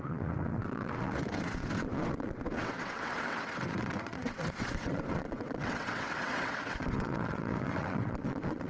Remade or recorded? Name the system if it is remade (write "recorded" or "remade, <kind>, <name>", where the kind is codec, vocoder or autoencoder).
remade, vocoder, WaveNeXt